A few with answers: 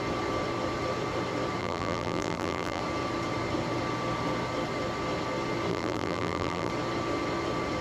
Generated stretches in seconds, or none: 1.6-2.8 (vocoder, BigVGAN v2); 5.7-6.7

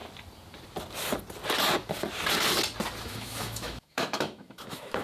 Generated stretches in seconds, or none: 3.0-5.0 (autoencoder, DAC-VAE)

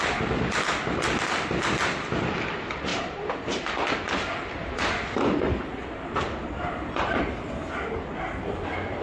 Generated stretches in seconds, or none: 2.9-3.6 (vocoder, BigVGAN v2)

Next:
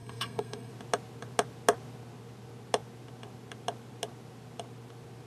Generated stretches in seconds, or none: 0.0-0.7 (codec, SNAC)